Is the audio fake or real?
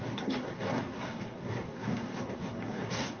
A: fake